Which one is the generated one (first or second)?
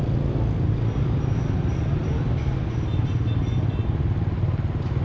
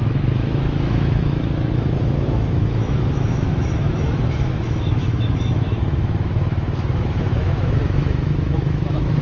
second